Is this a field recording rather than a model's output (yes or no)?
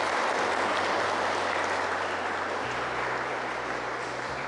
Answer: yes